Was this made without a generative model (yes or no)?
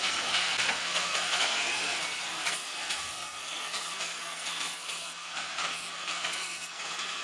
no